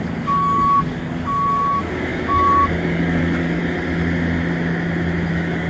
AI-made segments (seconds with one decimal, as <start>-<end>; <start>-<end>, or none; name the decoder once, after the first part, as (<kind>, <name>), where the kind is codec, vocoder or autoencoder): 0.0-3.6 (codec, DAC); 5.3-5.7